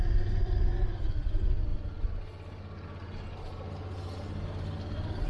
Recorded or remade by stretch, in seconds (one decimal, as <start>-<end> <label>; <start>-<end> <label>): 0.0-1.7 remade; 1.7-5.3 recorded